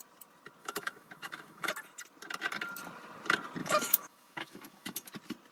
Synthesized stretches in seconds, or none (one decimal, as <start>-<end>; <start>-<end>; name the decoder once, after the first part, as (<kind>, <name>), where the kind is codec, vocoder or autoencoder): 0.6-1.7 (autoencoder, DAC-VAE); 3.6-5.1